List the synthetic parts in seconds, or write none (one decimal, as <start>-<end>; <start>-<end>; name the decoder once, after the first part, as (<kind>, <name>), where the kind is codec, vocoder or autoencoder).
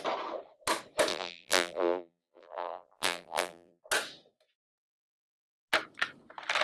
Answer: 1.1-3.8 (vocoder, BigVGAN v2)